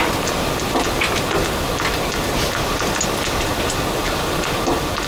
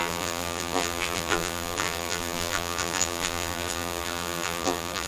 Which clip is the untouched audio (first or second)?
first